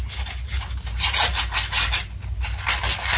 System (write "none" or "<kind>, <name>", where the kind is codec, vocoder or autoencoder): none